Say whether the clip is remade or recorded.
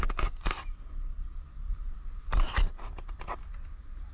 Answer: recorded